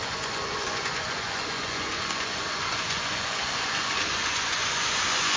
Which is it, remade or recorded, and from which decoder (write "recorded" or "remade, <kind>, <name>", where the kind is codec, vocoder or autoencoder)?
remade, vocoder, Vocos